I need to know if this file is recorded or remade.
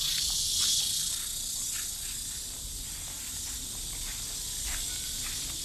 recorded